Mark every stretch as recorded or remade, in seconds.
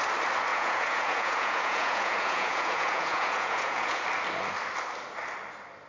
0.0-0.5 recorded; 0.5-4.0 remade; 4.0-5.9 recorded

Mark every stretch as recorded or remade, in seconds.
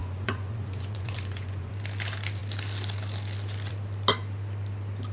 0.0-1.7 remade; 1.7-5.1 recorded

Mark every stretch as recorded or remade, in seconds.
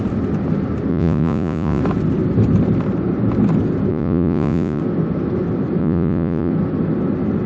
0.0-0.9 recorded; 0.9-1.8 remade; 1.8-3.9 recorded; 3.9-4.8 remade; 4.8-5.8 recorded; 5.8-6.5 remade; 6.5-7.5 recorded